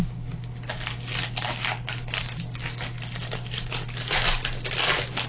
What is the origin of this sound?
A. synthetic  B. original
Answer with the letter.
B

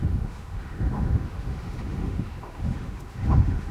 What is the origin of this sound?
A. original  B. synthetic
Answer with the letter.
B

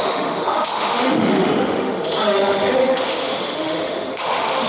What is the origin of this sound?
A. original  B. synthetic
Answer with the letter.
B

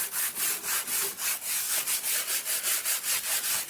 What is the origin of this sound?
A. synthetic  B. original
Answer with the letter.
B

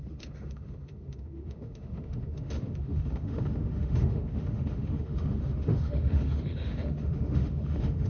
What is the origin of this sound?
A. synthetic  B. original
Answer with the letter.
A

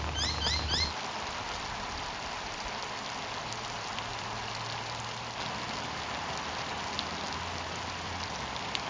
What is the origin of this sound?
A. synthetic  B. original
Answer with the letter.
B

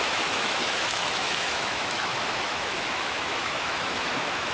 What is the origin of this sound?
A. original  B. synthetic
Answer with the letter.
B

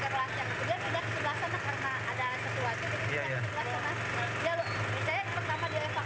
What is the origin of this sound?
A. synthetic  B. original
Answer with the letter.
B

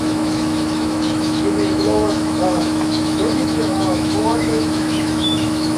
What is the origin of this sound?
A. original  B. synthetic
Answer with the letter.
B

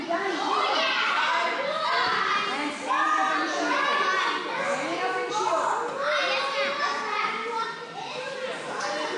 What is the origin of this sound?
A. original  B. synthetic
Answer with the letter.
A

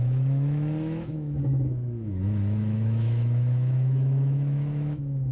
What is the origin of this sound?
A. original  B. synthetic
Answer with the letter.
B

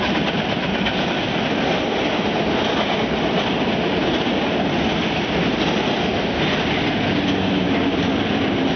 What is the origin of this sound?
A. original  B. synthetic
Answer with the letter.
A